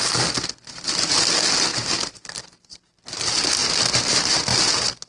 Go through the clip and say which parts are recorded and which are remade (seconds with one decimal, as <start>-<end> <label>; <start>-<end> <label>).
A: 0.0-1.7 recorded; 1.7-2.8 remade; 2.8-5.1 recorded